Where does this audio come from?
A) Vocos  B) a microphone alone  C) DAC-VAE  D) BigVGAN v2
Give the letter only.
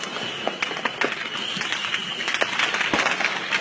B